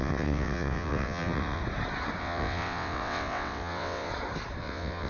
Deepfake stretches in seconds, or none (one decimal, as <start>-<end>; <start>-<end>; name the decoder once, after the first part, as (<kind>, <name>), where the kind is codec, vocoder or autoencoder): 0.0-1.6 (vocoder, WaveNeXt); 2.2-4.1; 4.6-5.1